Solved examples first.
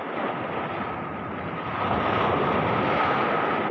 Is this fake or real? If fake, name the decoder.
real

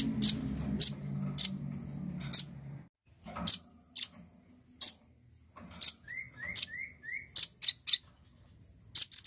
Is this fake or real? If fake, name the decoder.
real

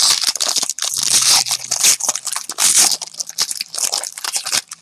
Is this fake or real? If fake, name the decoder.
real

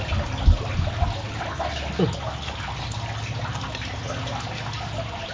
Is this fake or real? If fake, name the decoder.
real